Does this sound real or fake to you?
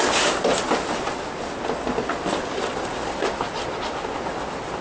real